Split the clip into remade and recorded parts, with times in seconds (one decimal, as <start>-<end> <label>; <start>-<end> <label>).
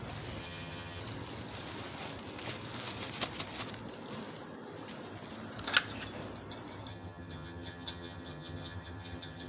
0.0-0.4 recorded; 0.4-1.0 remade; 1.0-6.9 recorded; 6.9-9.5 remade